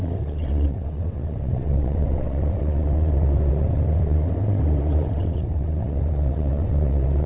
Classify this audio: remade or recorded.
remade